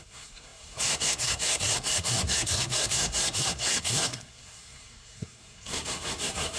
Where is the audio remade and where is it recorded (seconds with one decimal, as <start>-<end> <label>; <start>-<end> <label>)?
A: 0.0-6.6 remade